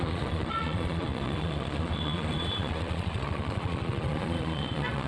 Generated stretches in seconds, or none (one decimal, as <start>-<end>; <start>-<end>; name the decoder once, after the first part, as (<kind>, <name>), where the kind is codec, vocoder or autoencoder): 0.0-5.1 (vocoder, Vocos)